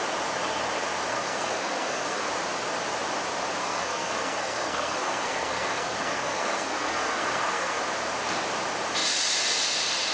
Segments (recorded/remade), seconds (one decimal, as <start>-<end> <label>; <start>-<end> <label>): 0.0-1.1 recorded; 1.1-2.3 remade; 2.3-3.6 recorded; 3.6-7.8 remade; 7.8-10.1 recorded